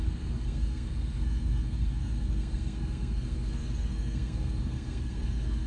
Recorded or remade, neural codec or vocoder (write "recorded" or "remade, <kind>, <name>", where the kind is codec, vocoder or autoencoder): remade, codec, SNAC